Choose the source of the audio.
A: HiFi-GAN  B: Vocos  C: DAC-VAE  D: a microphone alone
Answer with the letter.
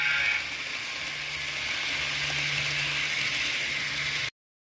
D